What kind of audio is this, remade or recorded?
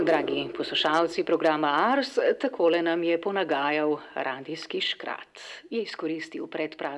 recorded